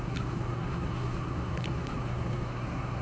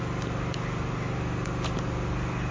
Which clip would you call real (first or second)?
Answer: second